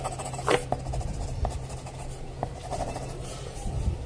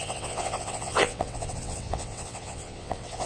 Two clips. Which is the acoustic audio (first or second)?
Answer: first